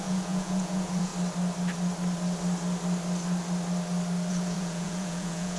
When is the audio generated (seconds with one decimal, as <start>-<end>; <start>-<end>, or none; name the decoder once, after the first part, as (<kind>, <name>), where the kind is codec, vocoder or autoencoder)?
0.0-1.1 (vocoder, Vocos); 4.3-5.6